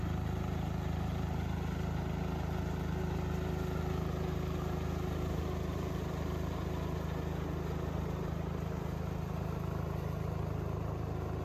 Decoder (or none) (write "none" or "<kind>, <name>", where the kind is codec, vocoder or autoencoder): none